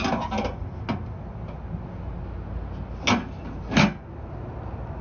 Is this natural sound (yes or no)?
yes